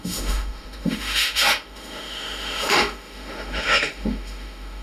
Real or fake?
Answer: fake